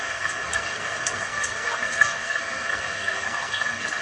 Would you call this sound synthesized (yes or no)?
yes